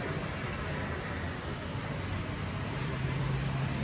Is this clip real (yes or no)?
yes